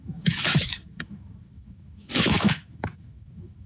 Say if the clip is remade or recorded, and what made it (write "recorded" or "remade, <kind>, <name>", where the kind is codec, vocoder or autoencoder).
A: remade, autoencoder, DAC-VAE